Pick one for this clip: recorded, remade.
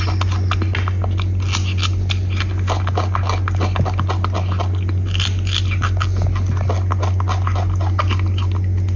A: recorded